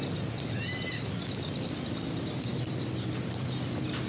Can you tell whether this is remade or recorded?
recorded